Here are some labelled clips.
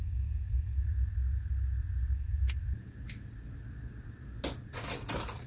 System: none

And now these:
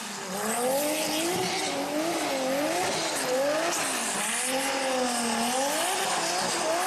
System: none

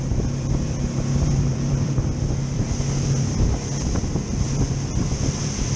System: vocoder, BigVGAN v2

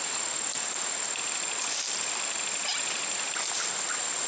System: none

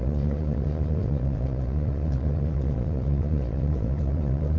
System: vocoder, Vocos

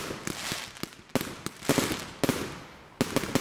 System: none